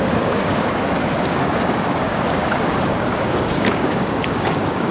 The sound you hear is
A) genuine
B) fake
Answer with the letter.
B